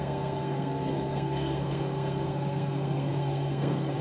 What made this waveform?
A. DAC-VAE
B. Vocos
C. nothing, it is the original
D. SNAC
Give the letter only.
D